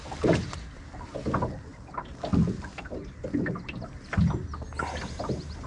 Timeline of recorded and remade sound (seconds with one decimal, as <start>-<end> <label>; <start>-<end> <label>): 0.0-5.7 recorded